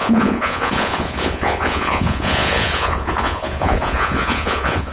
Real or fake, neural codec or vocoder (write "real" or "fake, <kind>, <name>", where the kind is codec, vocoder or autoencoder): fake, vocoder, Vocos